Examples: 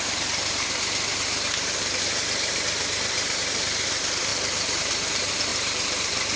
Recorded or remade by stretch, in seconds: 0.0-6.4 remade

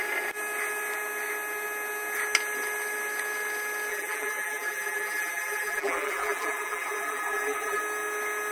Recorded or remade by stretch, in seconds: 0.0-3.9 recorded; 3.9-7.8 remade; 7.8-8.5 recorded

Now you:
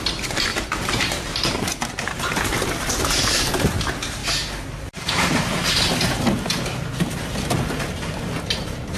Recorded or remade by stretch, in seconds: 0.0-4.2 remade; 4.2-4.8 recorded; 4.8-5.9 remade; 5.9-8.6 recorded; 8.6-9.0 remade

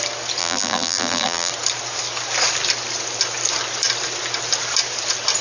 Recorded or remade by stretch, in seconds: 0.0-0.4 recorded; 0.4-1.5 remade; 1.5-5.4 recorded

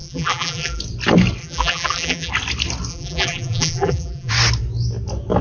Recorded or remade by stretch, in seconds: 0.0-0.8 remade; 0.8-1.4 recorded; 1.4-2.3 remade; 2.3-2.9 recorded; 2.9-4.3 remade; 4.3-5.4 recorded

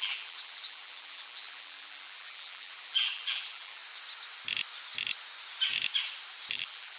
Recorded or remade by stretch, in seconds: 0.0-3.8 remade; 3.8-6.5 recorded; 6.5-7.0 remade